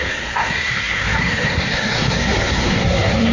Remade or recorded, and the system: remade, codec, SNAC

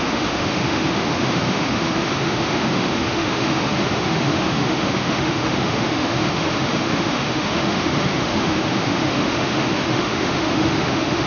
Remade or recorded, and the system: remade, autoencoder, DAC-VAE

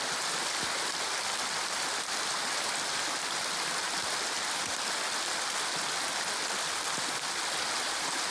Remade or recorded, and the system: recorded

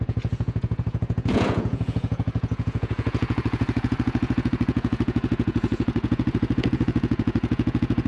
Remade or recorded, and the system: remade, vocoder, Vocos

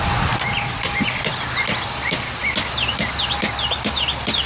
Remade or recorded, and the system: recorded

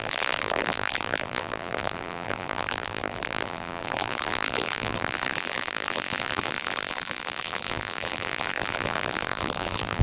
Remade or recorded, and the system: remade, vocoder, BigVGAN v2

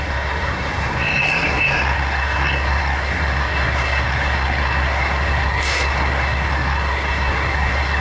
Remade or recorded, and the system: remade, codec, SNAC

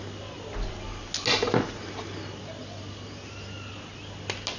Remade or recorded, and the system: recorded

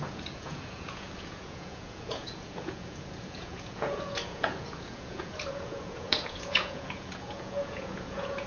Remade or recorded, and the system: remade, vocoder, Vocos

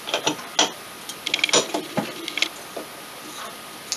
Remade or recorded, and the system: recorded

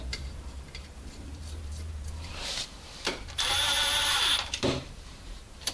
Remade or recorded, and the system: remade, vocoder, BigVGAN v2